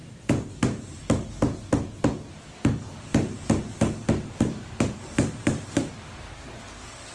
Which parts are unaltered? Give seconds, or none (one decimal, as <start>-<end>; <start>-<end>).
1.0-3.1; 6.6-7.1